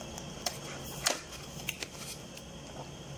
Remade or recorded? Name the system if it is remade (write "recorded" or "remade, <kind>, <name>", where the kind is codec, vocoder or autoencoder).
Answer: recorded